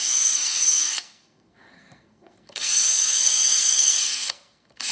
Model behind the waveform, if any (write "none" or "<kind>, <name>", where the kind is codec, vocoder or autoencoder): codec, SNAC